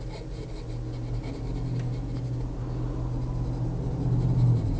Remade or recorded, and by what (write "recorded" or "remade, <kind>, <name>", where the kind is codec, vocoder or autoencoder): recorded